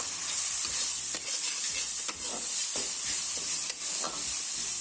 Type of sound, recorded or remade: recorded